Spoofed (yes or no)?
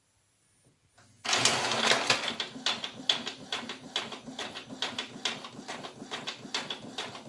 no